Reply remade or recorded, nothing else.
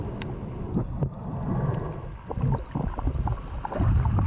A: recorded